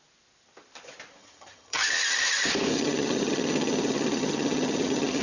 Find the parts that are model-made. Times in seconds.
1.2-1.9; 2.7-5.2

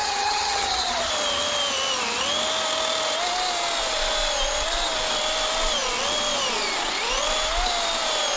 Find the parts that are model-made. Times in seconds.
0.0-1.1

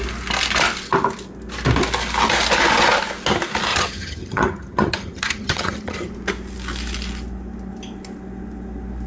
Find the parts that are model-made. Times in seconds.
3.7-6.1

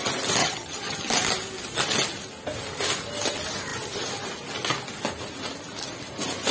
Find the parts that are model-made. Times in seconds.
0.4-1.1

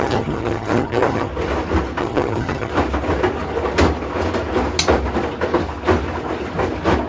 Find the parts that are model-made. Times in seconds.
0.0-1.3; 2.0-2.7

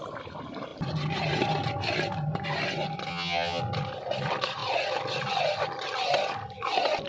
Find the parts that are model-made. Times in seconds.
3.1-3.6

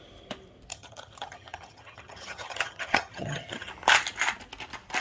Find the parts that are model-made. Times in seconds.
0.7-3.7

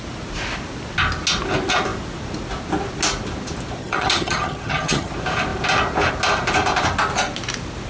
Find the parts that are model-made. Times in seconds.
3.8-5.1